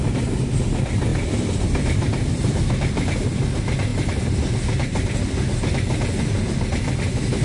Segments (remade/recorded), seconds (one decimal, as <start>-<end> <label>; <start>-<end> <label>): 0.0-1.1 recorded; 1.1-2.3 remade; 2.3-7.4 recorded

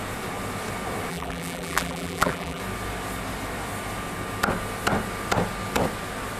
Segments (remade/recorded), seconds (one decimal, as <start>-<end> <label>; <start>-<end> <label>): 0.0-1.1 recorded; 1.1-2.6 remade; 2.6-6.4 recorded

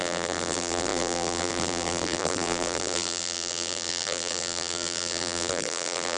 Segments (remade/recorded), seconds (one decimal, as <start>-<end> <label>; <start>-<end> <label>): 0.0-6.2 remade

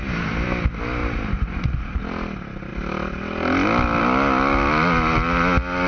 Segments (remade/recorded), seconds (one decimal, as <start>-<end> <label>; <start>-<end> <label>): 0.0-1.0 recorded; 1.0-2.0 remade; 2.0-5.9 recorded

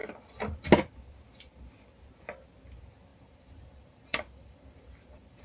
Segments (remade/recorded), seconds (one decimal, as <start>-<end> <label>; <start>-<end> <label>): 0.0-3.1 recorded; 3.1-5.4 remade

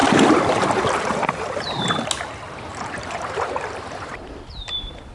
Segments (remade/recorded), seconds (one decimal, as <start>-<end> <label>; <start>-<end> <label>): 0.0-2.1 remade; 2.1-2.7 recorded; 2.7-5.1 remade

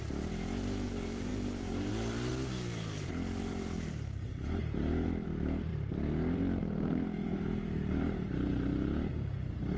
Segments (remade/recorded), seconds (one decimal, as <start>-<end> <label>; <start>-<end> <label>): 0.0-2.3 remade; 2.3-3.4 recorded; 3.4-9.8 remade

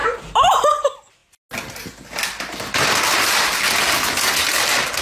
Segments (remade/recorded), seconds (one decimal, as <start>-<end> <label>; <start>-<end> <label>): 0.0-5.0 recorded